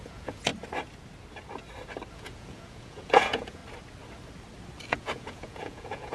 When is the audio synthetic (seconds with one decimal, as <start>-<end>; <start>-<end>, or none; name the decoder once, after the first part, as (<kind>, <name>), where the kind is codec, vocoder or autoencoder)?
0.0-0.5 (vocoder, Vocos); 2.1-3.6; 4.9-6.1